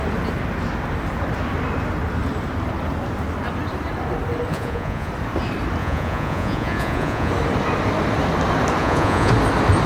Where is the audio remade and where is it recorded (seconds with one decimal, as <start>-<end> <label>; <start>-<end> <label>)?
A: 0.0-4.5 recorded; 4.5-5.1 remade; 5.1-5.8 recorded; 5.8-7.3 remade; 7.3-8.8 recorded; 8.8-9.3 remade; 9.3-9.9 recorded